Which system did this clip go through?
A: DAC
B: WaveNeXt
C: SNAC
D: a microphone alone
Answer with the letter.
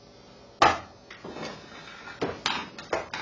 D